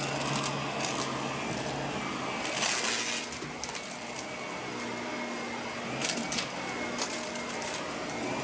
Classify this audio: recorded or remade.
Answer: recorded